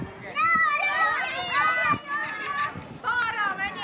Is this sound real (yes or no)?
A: yes